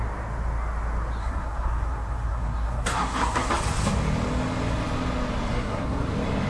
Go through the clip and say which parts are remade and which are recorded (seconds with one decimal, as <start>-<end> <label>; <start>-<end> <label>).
0.0-1.2 recorded; 1.2-3.5 remade; 3.5-5.5 recorded; 5.5-6.1 remade; 6.1-6.5 recorded